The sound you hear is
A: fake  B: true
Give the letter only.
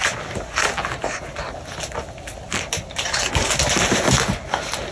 B